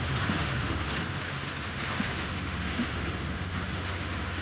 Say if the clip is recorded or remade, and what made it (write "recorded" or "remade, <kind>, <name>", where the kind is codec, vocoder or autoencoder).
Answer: remade, autoencoder, DAC-VAE